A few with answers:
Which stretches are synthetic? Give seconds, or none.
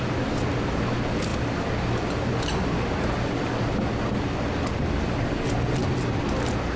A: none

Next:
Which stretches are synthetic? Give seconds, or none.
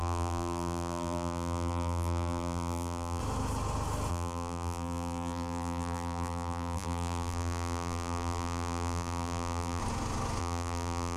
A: 0.0-3.2; 4.1-9.8; 10.4-11.2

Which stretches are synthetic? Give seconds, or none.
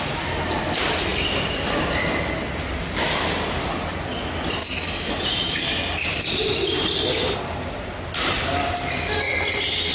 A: 1.1-1.7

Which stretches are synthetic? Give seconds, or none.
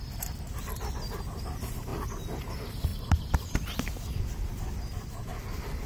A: 2.9-4.2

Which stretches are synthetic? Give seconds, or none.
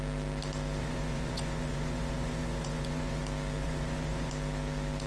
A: 0.8-3.2; 3.6-4.3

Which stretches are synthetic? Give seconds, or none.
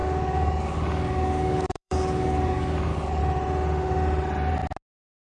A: 0.0-3.2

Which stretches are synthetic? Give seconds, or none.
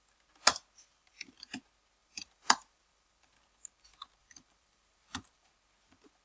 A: 1.0-1.6; 2.0-3.3; 4.2-5.5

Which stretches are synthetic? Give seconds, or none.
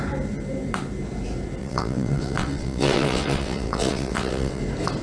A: 1.6-4.6